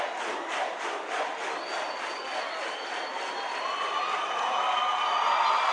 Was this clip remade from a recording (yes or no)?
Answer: no